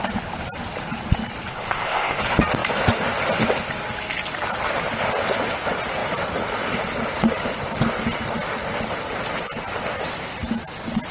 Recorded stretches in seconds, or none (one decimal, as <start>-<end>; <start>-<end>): 0.0-1.5; 2.2-11.1